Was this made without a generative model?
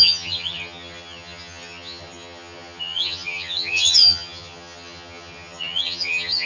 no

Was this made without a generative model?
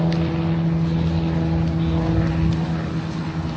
yes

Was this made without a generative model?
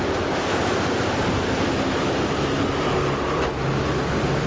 yes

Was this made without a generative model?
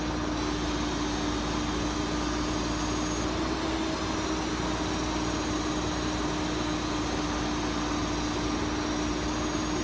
yes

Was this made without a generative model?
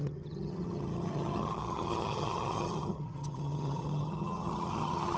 no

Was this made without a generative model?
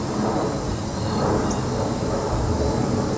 yes